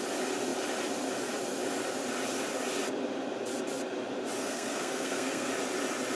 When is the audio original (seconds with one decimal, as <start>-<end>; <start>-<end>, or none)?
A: 0.0-4.4; 5.5-6.1